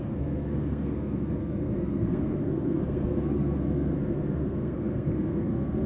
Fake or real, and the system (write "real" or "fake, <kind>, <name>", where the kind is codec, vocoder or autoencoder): fake, codec, SNAC